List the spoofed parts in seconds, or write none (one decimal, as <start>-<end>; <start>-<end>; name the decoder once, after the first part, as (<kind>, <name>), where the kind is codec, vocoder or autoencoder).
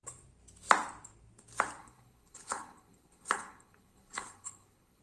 1.8-5.0 (codec, HILCodec)